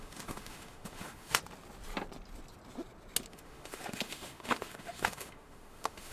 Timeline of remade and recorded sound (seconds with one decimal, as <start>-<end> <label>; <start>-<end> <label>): 0.0-1.4 remade; 1.4-3.3 recorded; 3.3-6.1 remade